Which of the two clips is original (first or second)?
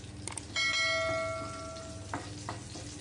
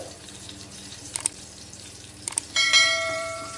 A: first